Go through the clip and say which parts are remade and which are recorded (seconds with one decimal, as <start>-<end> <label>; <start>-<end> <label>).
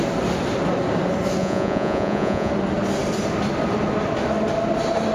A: 0.0-1.4 recorded; 1.4-2.5 remade; 2.5-5.1 recorded